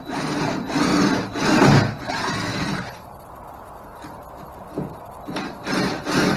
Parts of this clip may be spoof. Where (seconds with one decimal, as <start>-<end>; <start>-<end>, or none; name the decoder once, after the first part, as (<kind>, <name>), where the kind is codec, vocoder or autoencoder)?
2.5-3.3 (vocoder, BigVGAN v2)